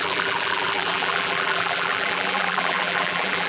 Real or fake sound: fake